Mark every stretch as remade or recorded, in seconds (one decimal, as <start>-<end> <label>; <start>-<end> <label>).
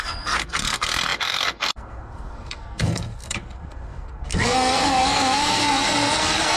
0.0-6.6 remade